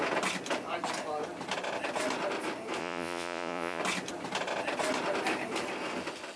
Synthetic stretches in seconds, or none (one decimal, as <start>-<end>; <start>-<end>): 2.8-3.8